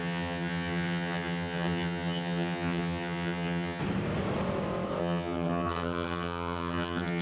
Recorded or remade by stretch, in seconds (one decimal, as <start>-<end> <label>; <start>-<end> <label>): 0.0-3.8 remade; 3.8-5.0 recorded; 5.0-7.2 remade

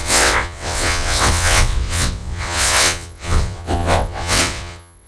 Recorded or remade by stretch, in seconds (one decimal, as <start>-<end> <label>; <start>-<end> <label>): 0.0-5.1 remade

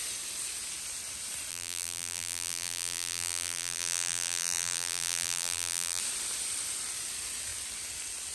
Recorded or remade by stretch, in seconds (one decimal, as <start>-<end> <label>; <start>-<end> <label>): 0.0-1.5 recorded; 1.5-6.0 remade; 6.0-8.3 recorded